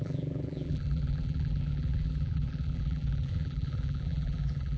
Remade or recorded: remade